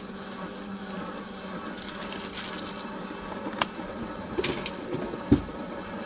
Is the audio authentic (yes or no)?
yes